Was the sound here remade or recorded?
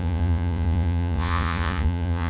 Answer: remade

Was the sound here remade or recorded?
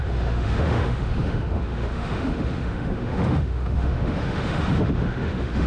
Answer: remade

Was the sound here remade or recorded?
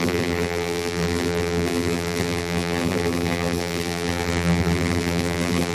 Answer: remade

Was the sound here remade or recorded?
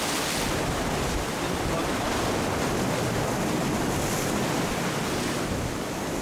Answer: recorded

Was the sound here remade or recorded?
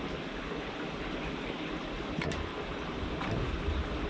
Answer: recorded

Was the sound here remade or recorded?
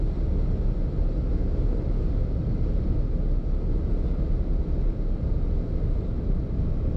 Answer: recorded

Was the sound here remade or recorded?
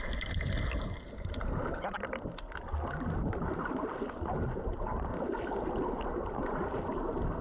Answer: recorded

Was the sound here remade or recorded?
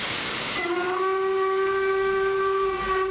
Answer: remade